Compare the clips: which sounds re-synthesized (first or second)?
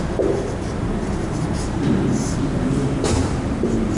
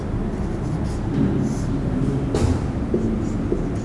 first